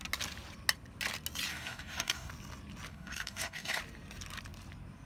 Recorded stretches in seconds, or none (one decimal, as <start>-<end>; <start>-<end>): 0.0-1.5; 2.3-2.9; 3.8-5.1